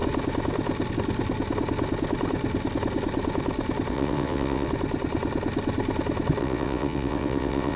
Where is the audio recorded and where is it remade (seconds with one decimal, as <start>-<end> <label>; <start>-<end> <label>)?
0.0-3.9 recorded; 3.9-4.7 remade; 4.7-6.4 recorded; 6.4-7.8 remade